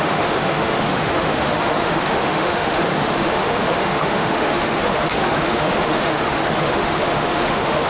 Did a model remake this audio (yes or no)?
yes